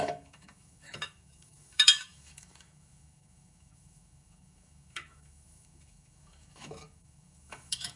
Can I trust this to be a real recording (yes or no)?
no